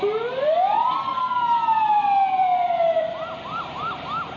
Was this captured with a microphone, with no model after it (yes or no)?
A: yes